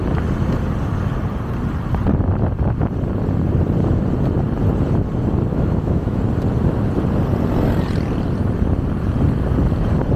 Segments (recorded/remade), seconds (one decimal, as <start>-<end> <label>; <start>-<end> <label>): 0.0-5.5 recorded; 5.5-6.2 remade; 6.2-10.2 recorded